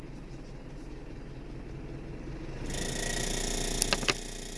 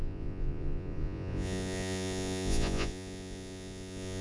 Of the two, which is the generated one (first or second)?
second